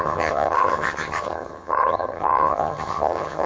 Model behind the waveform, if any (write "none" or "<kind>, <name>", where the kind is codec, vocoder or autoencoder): vocoder, HiFi-GAN